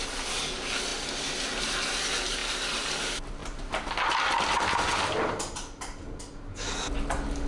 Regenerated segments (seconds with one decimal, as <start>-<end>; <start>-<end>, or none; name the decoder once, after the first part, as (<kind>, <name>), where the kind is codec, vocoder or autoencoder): none